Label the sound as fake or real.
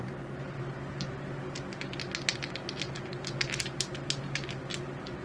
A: real